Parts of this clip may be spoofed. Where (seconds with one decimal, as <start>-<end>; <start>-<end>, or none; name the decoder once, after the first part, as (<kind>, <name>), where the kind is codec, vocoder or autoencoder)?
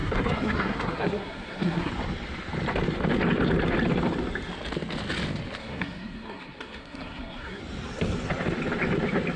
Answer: 0.0-1.9 (codec, SNAC); 5.6-7.6